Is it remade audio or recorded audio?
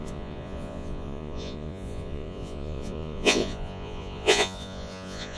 remade